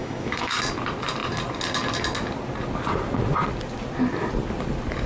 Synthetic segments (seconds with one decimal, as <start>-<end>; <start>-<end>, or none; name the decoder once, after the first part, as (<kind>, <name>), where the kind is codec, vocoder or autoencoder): 0.0-0.6 (autoencoder, DAC-VAE)

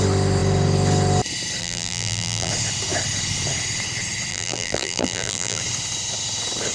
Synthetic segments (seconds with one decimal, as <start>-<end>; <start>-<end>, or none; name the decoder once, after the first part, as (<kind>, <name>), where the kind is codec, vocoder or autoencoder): 1.6-2.5 (vocoder, BigVGAN v2); 4.3-5.6